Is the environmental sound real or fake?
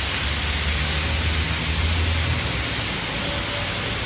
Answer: real